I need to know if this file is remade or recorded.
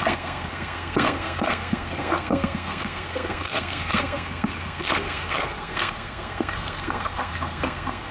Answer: remade